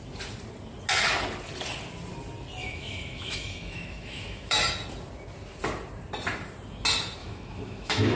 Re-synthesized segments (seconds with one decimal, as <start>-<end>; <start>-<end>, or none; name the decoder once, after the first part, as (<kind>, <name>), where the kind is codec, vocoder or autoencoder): 2.6-4.6 (autoencoder, DAC-VAE); 7.2-8.2

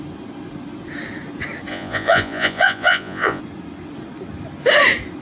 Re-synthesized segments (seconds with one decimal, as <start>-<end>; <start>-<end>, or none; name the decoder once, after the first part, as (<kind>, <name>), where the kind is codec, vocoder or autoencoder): 1.7-3.4 (vocoder, Vocos)

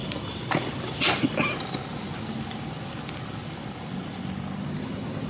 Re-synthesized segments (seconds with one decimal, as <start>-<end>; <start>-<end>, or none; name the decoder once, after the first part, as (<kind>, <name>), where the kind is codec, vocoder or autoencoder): none

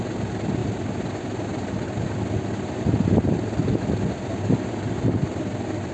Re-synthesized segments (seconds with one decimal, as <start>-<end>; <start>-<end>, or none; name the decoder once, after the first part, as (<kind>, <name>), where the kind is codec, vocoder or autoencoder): none

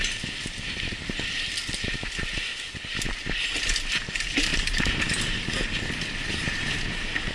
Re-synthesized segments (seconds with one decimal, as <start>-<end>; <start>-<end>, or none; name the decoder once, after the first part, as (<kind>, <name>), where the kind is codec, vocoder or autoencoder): 4.5-5.1 (vocoder, BigVGAN v2)